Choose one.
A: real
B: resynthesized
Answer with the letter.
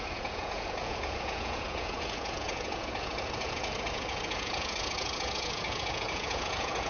B